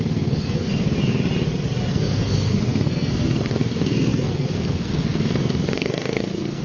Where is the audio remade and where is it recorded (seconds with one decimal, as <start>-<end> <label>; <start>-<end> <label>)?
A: 0.0-0.7 remade; 0.7-1.9 recorded; 1.9-6.6 remade